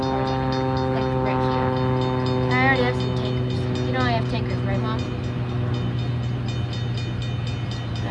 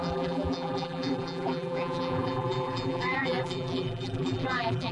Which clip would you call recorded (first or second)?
first